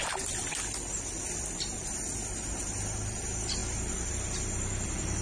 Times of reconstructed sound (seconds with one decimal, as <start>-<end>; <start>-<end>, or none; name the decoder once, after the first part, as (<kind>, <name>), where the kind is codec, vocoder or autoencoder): none